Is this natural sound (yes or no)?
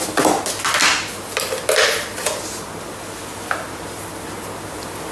yes